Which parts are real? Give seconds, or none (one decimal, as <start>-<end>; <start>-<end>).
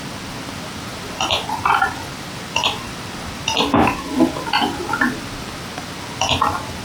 0.0-0.9; 4.9-6.8